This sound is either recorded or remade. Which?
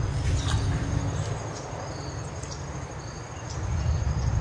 recorded